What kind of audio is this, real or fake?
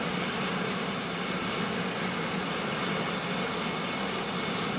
real